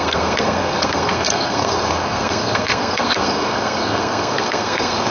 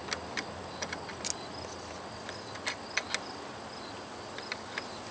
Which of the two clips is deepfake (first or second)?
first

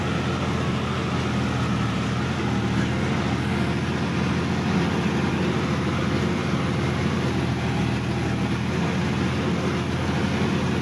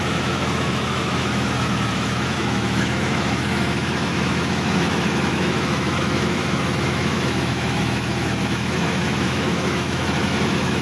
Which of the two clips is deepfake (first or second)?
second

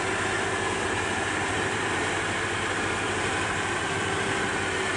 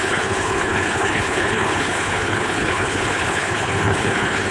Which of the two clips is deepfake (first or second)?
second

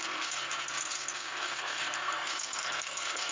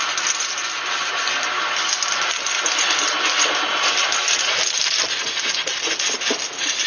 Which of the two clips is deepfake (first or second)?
first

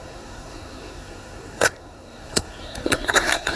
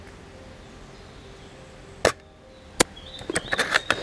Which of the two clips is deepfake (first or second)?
first